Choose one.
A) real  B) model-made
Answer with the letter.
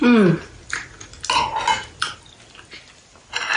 A